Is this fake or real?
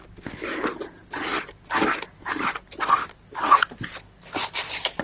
real